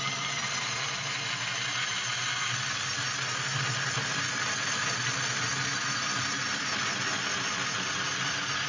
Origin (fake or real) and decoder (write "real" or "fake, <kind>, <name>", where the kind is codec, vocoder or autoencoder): real